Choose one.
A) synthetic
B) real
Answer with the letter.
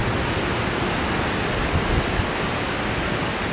B